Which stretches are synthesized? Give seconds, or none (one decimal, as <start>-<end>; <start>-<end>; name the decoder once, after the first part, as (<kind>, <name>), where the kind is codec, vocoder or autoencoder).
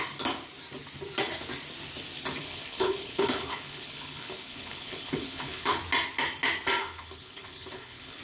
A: 2.4-5.8 (codec, HILCodec); 6.8-8.2